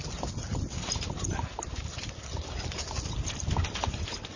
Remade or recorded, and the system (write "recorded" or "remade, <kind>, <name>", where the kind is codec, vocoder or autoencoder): recorded